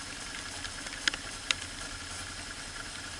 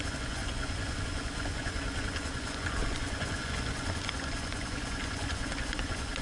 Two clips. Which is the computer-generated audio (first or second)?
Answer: second